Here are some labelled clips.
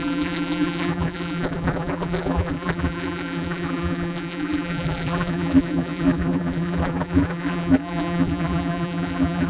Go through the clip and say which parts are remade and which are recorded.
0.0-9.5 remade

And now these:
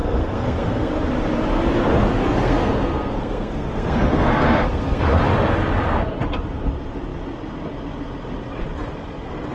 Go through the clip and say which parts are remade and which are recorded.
0.0-0.9 remade; 0.9-2.2 recorded; 2.2-5.0 remade; 5.0-9.5 recorded

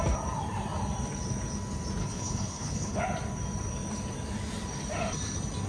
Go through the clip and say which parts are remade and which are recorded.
0.0-2.0 recorded; 2.0-3.0 remade; 3.0-5.7 recorded

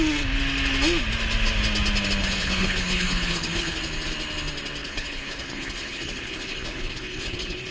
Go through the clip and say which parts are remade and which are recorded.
0.0-2.2 recorded; 2.2-3.8 remade; 3.8-4.8 recorded; 4.8-7.7 remade

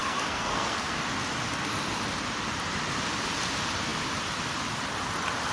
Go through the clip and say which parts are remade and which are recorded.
0.0-1.0 remade; 1.0-5.5 recorded

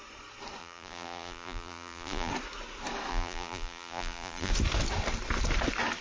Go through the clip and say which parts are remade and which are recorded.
0.0-0.6 recorded; 0.6-2.3 remade; 2.3-3.1 recorded; 3.1-4.5 remade; 4.5-6.0 recorded

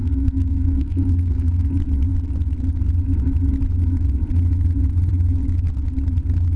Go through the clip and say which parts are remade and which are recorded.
0.0-1.7 remade; 1.7-6.6 recorded